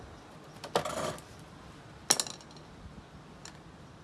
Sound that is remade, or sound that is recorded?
recorded